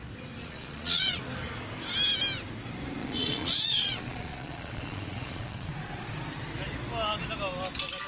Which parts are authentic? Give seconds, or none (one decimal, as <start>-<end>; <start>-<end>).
0.0-0.4; 1.2-3.0; 5.7-8.1